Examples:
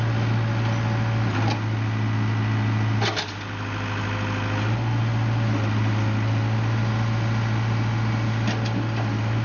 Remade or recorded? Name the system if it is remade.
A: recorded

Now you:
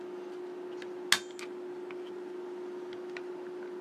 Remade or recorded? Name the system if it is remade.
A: recorded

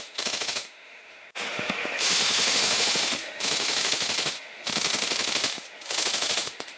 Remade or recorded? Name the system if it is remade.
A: remade, autoencoder, DAC-VAE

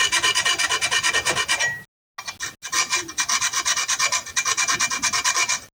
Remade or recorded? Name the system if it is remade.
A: recorded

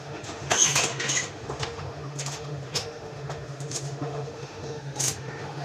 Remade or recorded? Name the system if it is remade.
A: remade, autoencoder, DAC-VAE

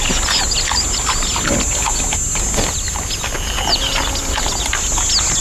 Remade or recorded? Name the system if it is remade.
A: recorded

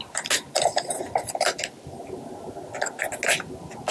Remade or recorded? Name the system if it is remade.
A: recorded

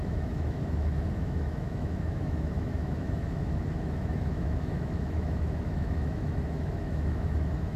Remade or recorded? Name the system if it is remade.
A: remade, autoencoder, DAC-VAE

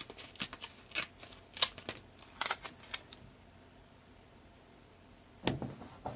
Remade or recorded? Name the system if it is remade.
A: recorded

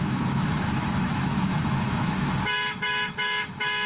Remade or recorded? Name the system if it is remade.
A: remade, autoencoder, DAC-VAE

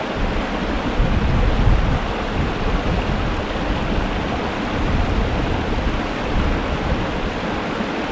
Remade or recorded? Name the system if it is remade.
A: recorded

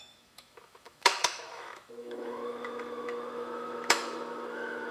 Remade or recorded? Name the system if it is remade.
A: remade, autoencoder, DAC-VAE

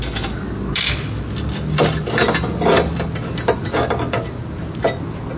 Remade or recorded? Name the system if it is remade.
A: recorded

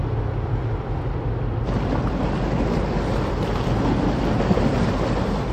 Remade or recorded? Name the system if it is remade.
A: recorded